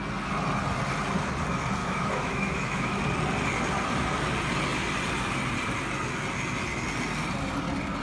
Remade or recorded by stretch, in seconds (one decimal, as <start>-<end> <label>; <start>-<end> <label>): 0.0-1.8 recorded; 1.8-3.0 remade; 3.0-8.0 recorded

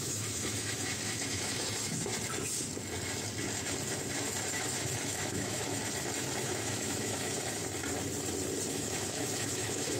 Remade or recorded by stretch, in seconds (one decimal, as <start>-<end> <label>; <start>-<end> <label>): 0.0-2.1 remade; 2.1-4.5 recorded; 4.5-5.8 remade; 5.8-6.4 recorded; 6.4-7.6 remade; 7.6-8.7 recorded; 8.7-10.0 remade

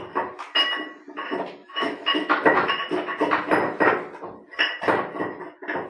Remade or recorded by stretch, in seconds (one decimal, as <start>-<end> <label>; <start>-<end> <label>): 0.0-1.6 recorded; 1.6-2.7 remade; 2.7-5.9 recorded

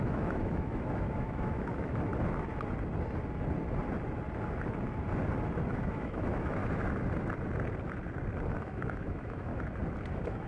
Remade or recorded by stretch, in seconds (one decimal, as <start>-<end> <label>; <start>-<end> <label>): 0.0-2.1 remade; 2.1-5.7 recorded; 5.7-6.6 remade; 6.6-8.6 recorded; 8.6-9.5 remade; 9.5-10.1 recorded; 10.1-10.5 remade

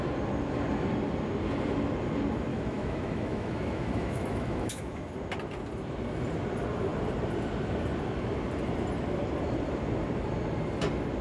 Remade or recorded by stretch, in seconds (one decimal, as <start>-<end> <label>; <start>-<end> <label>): 0.0-2.5 recorded; 2.5-5.1 remade; 5.1-11.2 recorded